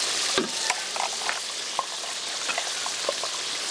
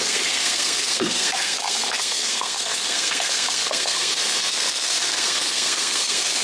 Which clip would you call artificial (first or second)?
second